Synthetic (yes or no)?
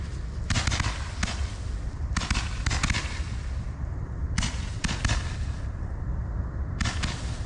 no